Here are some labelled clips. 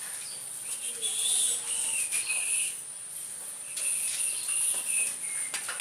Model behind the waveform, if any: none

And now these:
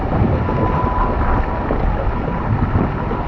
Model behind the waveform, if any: none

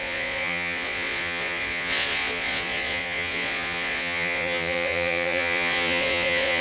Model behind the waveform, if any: vocoder, Vocos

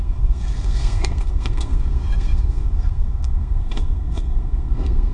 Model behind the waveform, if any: codec, SNAC